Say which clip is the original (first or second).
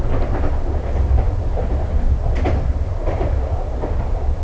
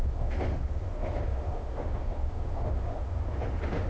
first